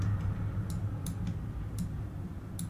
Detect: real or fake real